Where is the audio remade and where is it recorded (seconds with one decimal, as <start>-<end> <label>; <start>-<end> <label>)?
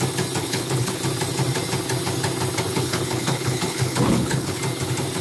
0.0-0.4 recorded; 0.4-1.0 remade; 1.0-2.7 recorded; 2.7-4.6 remade; 4.6-5.2 recorded